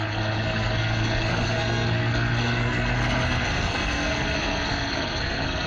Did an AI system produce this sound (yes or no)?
yes